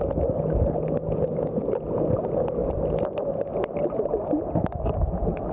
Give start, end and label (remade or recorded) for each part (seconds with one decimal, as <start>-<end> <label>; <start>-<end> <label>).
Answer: 0.0-5.5 recorded